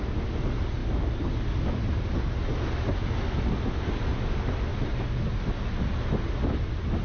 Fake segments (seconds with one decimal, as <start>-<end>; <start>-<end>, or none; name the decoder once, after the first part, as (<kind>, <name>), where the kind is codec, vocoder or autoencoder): none